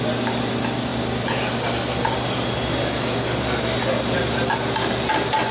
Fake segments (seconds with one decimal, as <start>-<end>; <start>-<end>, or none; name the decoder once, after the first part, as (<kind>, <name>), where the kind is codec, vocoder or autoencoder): none